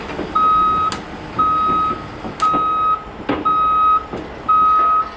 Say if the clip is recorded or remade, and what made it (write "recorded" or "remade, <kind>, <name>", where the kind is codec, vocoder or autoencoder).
recorded